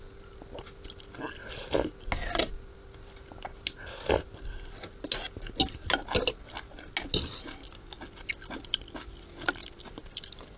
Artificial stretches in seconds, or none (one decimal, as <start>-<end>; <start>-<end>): none